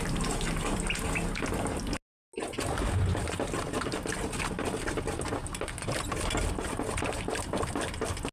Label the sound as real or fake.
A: real